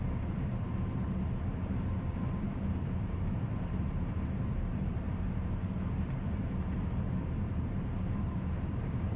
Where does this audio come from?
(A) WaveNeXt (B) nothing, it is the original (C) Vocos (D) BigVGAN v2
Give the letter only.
D